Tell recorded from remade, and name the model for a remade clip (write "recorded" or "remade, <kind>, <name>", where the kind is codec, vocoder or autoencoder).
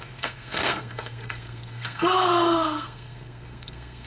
remade, codec, SNAC